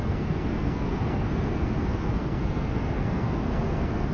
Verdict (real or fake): fake